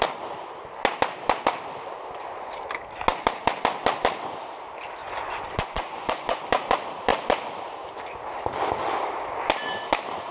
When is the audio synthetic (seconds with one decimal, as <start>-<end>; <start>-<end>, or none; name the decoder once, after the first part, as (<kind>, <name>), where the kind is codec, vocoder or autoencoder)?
5.0-6.4 (vocoder, Vocos)

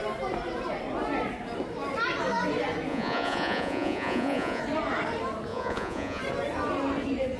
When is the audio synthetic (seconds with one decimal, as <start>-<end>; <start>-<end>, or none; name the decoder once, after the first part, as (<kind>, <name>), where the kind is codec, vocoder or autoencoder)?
2.9-4.6 (vocoder, Vocos); 5.5-6.2

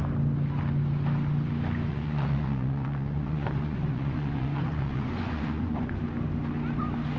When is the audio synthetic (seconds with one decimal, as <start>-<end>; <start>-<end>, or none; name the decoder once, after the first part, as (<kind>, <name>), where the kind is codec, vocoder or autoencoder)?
1.9-6.0 (vocoder, Vocos)

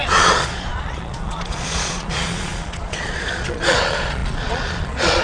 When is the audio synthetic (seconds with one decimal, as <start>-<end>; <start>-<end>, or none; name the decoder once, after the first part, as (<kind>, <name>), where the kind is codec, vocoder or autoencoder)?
0.0-5.2 (vocoder, Vocos)

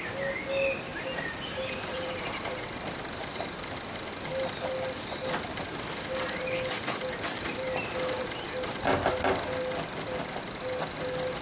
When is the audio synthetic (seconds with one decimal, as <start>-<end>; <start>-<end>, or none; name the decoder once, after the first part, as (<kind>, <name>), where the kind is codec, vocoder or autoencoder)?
none